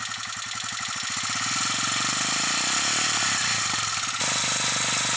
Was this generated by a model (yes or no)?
no